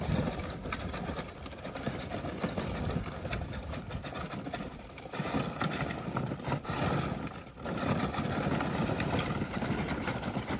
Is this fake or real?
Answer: real